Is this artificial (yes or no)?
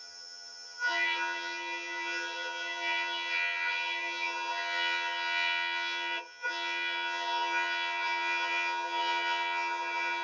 yes